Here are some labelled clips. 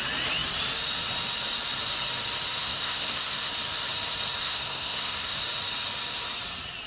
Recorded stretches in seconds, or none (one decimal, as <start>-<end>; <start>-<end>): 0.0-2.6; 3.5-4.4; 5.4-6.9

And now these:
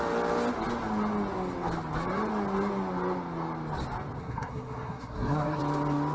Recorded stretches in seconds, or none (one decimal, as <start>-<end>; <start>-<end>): 0.0-4.2; 5.6-6.1

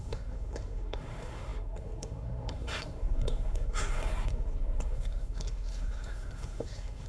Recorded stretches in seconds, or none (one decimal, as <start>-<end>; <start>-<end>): none

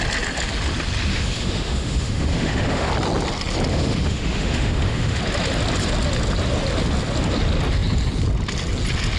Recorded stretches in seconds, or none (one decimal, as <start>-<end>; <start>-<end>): 0.0-1.1; 2.9-3.7; 5.2-9.2

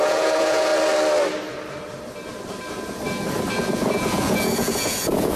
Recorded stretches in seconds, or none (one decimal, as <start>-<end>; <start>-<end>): 0.7-3.6